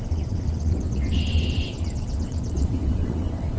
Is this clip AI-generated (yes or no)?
yes